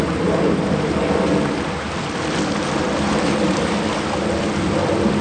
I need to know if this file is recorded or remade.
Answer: recorded